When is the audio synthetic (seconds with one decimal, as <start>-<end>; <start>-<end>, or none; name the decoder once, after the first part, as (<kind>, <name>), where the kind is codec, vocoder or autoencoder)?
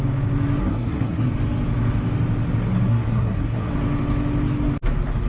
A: 0.6-1.3 (codec, SNAC); 2.9-3.7